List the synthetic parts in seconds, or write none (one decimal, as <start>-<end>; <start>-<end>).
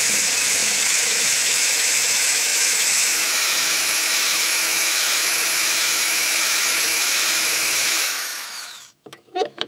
0.0-9.7